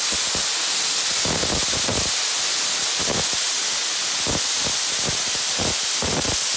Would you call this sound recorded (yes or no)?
yes